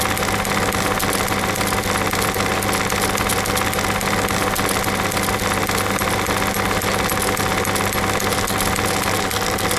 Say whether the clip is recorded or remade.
recorded